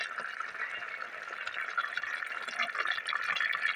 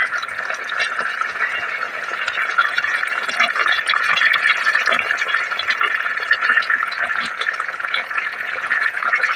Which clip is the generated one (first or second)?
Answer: second